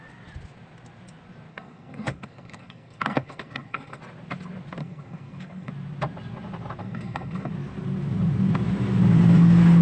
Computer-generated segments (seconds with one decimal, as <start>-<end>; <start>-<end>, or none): 1.5-4.0; 4.8-5.7; 6.8-7.5